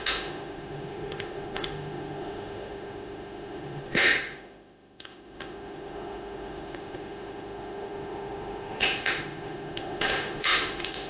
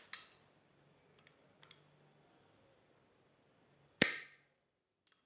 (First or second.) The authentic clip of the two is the second